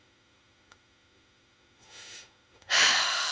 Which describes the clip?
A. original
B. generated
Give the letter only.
B